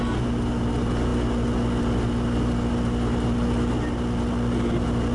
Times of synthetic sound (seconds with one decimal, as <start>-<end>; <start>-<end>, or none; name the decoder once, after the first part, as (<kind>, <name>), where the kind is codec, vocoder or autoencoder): none